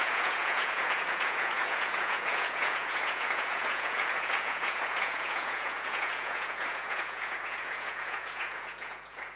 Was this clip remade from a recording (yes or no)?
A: yes